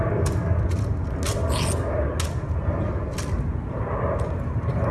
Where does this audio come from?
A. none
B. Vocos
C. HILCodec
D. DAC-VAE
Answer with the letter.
A